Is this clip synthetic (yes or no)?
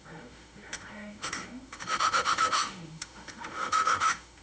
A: yes